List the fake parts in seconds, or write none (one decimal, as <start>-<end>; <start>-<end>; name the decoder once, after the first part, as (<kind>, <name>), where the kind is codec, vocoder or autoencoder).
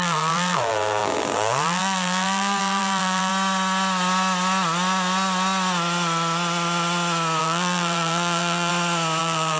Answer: 0.0-3.3 (vocoder, BigVGAN v2); 7.4-8.7; 9.2-9.6